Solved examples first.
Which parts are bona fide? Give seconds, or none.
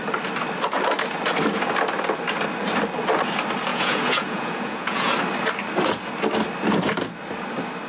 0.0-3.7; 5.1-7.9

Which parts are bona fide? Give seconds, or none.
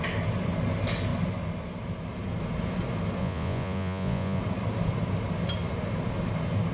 0.0-3.2; 4.4-6.7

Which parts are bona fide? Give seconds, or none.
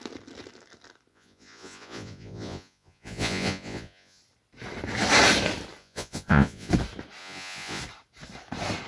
0.0-1.1; 4.2-5.8; 6.7-7.2; 7.8-8.9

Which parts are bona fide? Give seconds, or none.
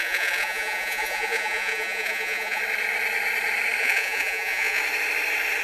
2.6-3.8; 4.8-5.6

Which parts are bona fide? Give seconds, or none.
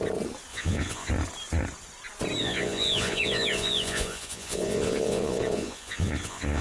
0.0-0.5; 1.1-2.4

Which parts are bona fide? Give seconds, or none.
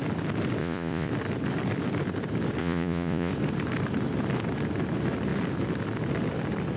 0.0-0.6; 1.1-2.6; 3.3-6.8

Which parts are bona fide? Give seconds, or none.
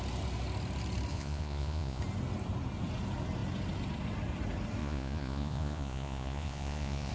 0.0-1.1; 2.0-4.8